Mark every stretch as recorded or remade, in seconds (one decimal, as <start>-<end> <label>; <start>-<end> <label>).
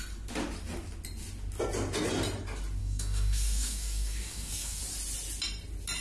0.0-2.8 recorded; 2.8-4.8 remade; 4.8-6.0 recorded